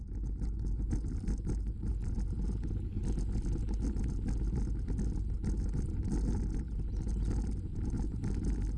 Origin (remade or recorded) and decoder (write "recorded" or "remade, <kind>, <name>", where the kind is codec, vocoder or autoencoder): recorded